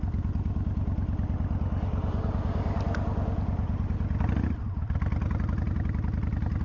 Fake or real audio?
real